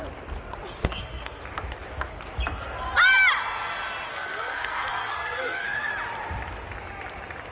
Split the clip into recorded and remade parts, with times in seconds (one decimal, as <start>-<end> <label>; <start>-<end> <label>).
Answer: 0.0-0.8 recorded; 0.8-1.4 remade; 1.4-4.1 recorded; 4.1-5.9 remade; 5.9-7.5 recorded